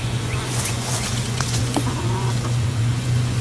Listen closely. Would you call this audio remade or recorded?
remade